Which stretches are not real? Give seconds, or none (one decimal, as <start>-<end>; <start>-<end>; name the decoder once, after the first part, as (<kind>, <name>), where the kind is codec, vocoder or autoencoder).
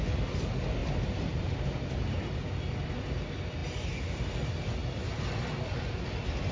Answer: none